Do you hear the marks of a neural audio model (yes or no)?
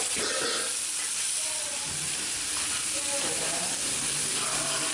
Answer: no